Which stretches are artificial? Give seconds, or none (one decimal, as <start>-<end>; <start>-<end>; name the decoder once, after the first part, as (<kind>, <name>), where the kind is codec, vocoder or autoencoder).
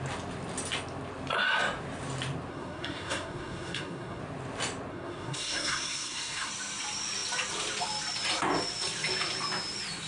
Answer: 2.5-4.2 (codec, SNAC); 4.9-6.5